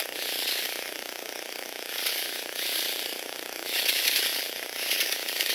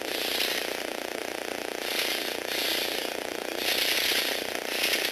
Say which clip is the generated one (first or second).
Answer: first